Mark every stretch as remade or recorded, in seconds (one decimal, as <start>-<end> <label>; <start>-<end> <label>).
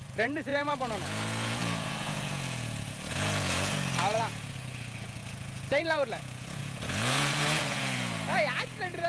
0.0-9.1 remade